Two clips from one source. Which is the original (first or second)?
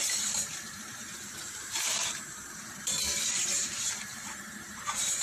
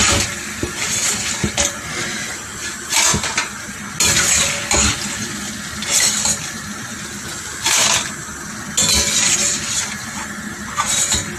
second